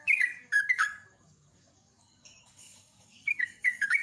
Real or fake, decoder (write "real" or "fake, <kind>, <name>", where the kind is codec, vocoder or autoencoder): fake, codec, DAC